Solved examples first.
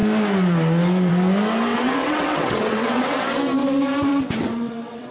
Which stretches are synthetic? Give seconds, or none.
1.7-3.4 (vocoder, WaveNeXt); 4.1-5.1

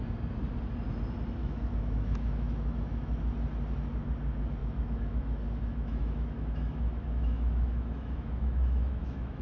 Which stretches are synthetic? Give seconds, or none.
1.4-3.2 (autoencoder, DAC-VAE); 4.6-9.4

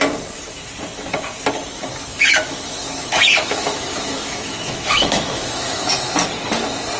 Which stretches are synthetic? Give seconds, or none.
2.1-5.9 (autoencoder, DAC-VAE)

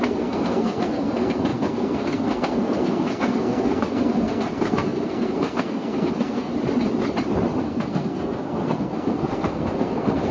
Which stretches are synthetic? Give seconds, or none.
0.0-6.5 (codec, SNAC); 7.6-10.3

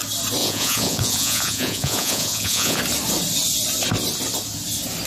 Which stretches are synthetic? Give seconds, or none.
0.4-2.8 (vocoder, Vocos)

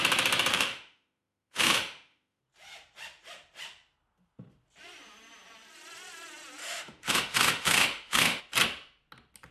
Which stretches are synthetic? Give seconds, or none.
0.5-2.4 (autoencoder, DAC-VAE); 6.6-8.4

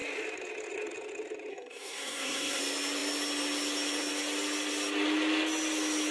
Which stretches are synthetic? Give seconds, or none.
1.5-2.6 (codec, SNAC)